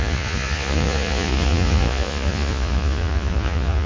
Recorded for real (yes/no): no